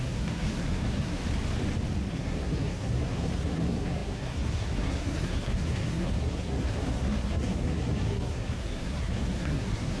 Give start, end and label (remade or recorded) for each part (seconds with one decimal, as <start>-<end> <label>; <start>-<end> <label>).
0.0-1.2 remade; 1.2-2.1 recorded; 2.1-10.0 remade